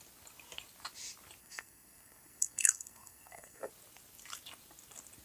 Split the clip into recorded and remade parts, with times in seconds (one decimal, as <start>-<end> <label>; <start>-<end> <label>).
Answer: 0.0-1.4 recorded; 1.4-3.7 remade; 3.7-5.2 recorded